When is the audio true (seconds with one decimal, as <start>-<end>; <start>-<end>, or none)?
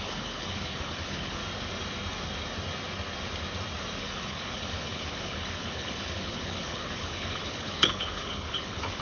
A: 1.4-4.0